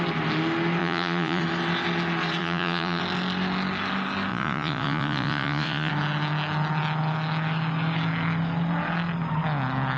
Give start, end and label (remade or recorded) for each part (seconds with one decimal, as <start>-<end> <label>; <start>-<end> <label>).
0.0-0.8 recorded; 0.8-1.4 remade; 1.4-2.4 recorded; 2.4-3.0 remade; 3.0-4.3 recorded; 4.3-5.9 remade; 5.9-10.0 recorded